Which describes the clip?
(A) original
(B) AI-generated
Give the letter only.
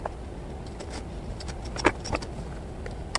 A